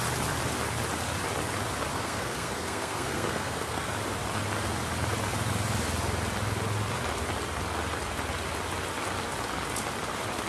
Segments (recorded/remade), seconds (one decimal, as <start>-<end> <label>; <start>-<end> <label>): 0.0-1.9 recorded; 1.9-3.9 remade; 3.9-10.5 recorded